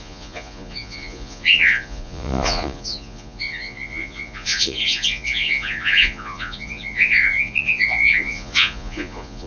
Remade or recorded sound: remade